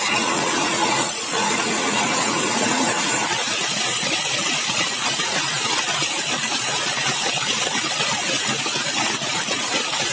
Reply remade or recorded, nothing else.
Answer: remade